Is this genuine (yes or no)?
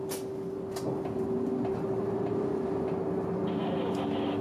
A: yes